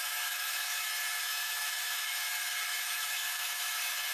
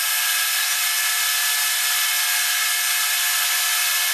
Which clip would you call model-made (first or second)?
first